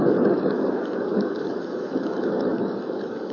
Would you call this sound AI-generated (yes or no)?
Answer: yes